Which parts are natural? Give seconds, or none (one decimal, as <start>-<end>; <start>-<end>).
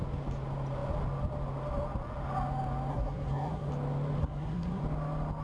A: 0.0-2.9; 3.7-4.2; 4.8-5.4